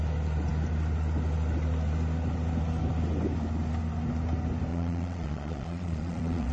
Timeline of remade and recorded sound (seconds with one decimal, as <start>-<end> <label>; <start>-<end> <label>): 0.0-4.7 recorded; 4.7-6.5 remade